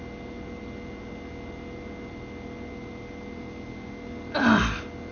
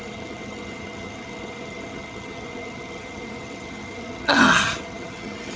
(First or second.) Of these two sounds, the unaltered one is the first